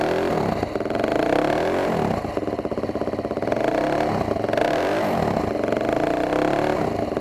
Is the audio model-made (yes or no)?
no